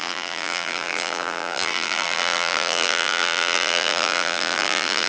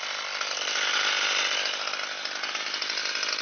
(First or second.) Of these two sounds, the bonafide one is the second